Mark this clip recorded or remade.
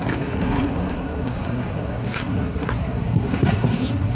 remade